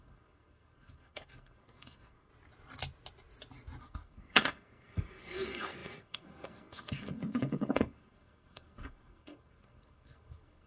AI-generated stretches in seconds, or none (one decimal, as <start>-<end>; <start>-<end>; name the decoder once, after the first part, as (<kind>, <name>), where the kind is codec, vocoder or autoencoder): 0.0-2.3 (codec, SNAC); 3.8-10.7